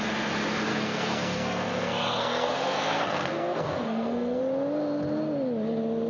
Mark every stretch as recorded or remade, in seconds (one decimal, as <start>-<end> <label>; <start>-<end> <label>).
0.0-0.7 recorded; 0.7-4.4 remade; 4.4-6.1 recorded